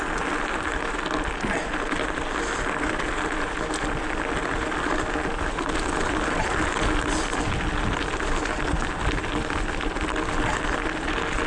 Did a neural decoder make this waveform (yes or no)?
no